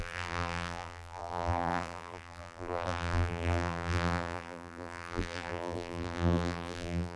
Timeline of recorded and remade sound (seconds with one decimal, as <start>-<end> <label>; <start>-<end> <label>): 0.0-7.2 remade